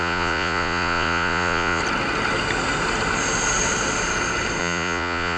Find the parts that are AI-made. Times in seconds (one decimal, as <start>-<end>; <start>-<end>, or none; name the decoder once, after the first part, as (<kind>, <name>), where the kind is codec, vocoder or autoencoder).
0.0-1.8 (vocoder, Vocos); 4.6-5.4